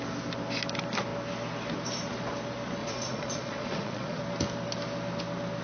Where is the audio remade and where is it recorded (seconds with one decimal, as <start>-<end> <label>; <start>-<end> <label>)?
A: 0.0-2.8 recorded; 2.8-4.2 remade; 4.2-5.6 recorded